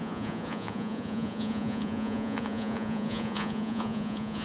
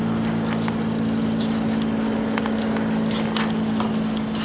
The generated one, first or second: first